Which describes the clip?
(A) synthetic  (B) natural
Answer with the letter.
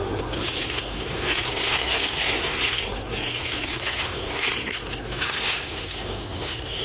A